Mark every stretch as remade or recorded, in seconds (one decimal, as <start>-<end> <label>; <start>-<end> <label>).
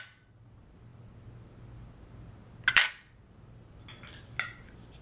0.0-5.0 recorded